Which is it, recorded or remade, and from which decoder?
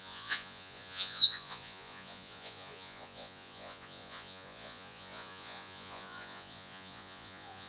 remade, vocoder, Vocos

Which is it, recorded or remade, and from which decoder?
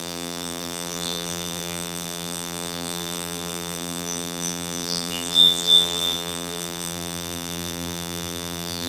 remade, vocoder, BigVGAN v2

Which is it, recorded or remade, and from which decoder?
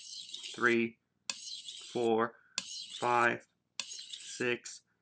recorded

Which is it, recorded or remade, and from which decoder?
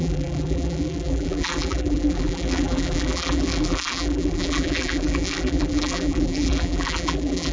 remade, vocoder, BigVGAN v2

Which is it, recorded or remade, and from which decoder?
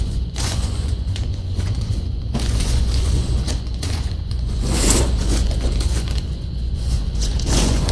remade, vocoder, Vocos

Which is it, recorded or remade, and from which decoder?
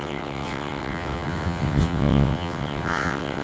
remade, vocoder, WaveNeXt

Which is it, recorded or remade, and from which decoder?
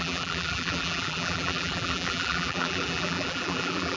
remade, vocoder, BigVGAN v2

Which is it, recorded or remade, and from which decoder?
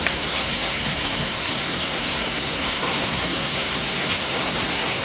remade, codec, SNAC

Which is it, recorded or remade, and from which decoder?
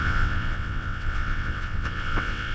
remade, vocoder, WaveNeXt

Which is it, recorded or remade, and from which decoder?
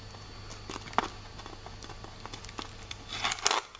recorded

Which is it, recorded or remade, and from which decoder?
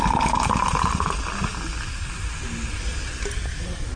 recorded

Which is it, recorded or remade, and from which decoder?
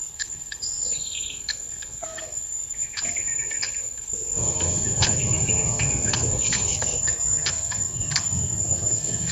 remade, codec, SNAC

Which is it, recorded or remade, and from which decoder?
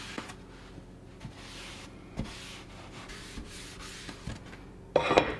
recorded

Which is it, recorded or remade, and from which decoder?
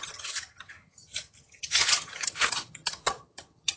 remade, vocoder, HiFi-GAN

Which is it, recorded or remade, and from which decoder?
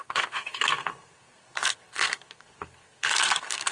remade, codec, SNAC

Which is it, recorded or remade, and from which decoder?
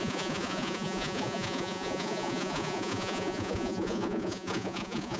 remade, vocoder, Vocos